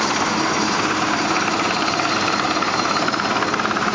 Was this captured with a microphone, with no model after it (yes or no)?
no